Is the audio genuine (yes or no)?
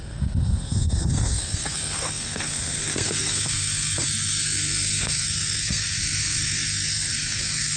no